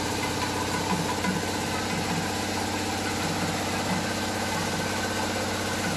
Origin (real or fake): real